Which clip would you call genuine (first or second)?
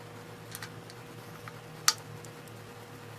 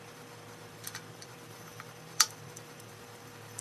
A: first